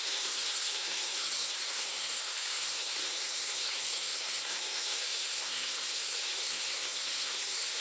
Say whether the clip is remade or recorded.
remade